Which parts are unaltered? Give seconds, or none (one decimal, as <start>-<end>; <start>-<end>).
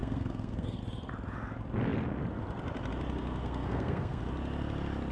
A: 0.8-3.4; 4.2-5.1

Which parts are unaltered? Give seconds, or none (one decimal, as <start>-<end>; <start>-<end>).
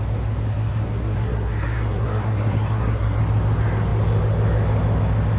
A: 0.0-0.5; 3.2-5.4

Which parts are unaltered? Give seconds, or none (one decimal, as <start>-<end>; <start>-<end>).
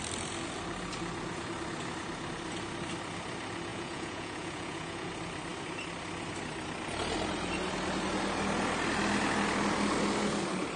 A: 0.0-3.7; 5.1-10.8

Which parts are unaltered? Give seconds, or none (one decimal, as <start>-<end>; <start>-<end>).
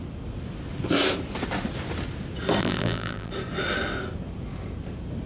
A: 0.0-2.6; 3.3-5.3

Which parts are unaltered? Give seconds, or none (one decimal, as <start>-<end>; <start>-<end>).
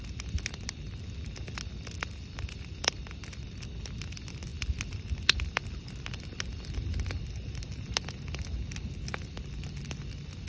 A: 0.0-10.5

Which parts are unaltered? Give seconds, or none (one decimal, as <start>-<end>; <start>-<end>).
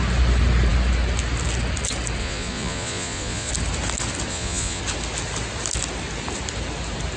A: 0.0-2.2; 3.5-4.3; 4.8-7.2